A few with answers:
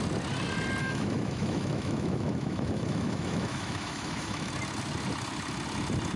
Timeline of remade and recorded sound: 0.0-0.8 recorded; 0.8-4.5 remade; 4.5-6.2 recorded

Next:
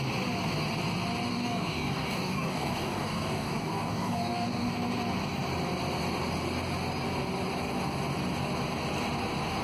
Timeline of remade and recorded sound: 0.0-1.3 recorded; 1.3-4.7 remade; 4.7-9.6 recorded

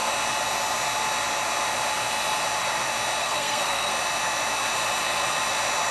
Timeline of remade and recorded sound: 0.0-3.2 recorded; 3.2-3.9 remade; 3.9-5.9 recorded

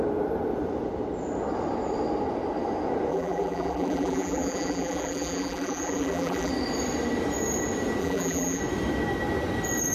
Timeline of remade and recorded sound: 0.0-3.1 recorded; 3.1-6.5 remade; 6.5-8.0 recorded; 8.0-8.6 remade; 8.6-9.9 recorded

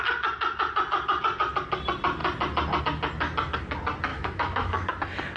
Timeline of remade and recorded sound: 0.0-4.1 recorded; 4.1-4.9 remade; 4.9-5.4 recorded

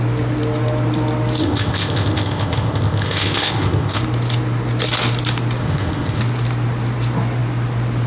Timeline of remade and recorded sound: 0.0-1.4 recorded; 1.4-4.0 remade; 4.0-5.6 recorded; 5.6-6.2 remade; 6.2-8.1 recorded

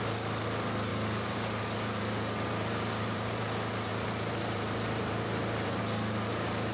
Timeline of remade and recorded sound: 0.0-0.9 recorded; 0.9-3.4 remade; 3.4-3.9 recorded; 3.9-5.8 remade; 5.8-6.7 recorded

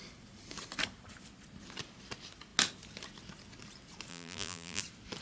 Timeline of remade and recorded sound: 0.0-4.1 recorded; 4.1-4.8 remade; 4.8-5.2 recorded